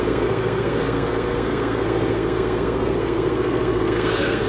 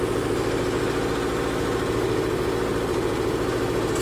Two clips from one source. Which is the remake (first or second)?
first